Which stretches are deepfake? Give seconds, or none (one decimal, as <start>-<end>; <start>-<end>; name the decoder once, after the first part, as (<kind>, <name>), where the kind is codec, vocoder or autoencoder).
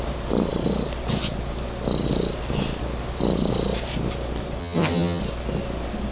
4.6-5.2 (vocoder, HiFi-GAN)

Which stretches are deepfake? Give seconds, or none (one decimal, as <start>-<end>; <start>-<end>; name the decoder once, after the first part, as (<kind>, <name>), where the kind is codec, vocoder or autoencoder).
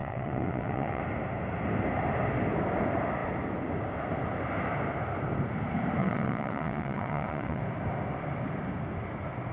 0.0-1.0 (vocoder, WaveNeXt); 6.0-7.6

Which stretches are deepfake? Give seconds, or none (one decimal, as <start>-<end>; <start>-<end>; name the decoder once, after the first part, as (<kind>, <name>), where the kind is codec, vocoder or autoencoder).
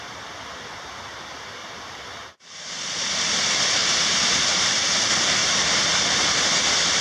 1.6-2.3 (vocoder, BigVGAN v2); 5.4-7.0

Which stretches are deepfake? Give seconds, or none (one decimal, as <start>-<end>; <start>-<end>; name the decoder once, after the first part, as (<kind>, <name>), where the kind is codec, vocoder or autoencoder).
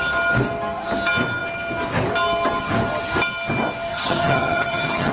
3.9-5.1 (vocoder, HiFi-GAN)